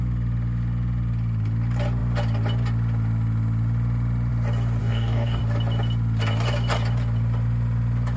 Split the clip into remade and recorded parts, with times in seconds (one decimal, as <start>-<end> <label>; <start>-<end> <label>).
0.0-4.8 recorded; 4.8-5.4 remade; 5.4-8.2 recorded